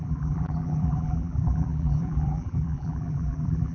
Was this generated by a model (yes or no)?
yes